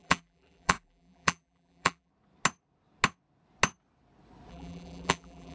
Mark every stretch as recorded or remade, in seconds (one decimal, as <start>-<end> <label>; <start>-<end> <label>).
0.0-2.1 remade; 2.1-4.5 recorded; 4.5-5.5 remade